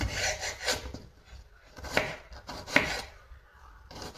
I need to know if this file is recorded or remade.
remade